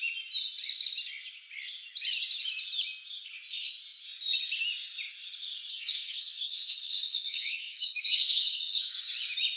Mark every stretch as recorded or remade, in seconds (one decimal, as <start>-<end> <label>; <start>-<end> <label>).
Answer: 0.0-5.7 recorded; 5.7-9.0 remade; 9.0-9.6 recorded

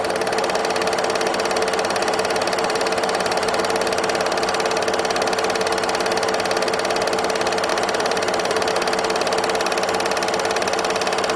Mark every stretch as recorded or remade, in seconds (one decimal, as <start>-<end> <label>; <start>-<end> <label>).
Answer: 0.0-2.0 recorded; 2.0-3.6 remade; 3.6-7.7 recorded; 7.7-8.7 remade; 8.7-11.4 recorded

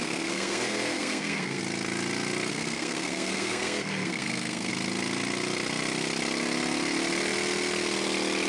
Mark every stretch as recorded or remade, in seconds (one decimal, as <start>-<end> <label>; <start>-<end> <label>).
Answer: 0.0-1.6 remade; 1.6-2.5 recorded; 2.5-4.7 remade; 4.7-8.5 recorded